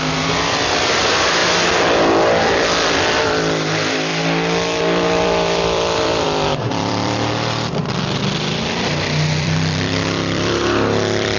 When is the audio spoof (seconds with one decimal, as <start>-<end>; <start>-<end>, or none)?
0.0-1.4; 2.9-4.1; 4.8-11.4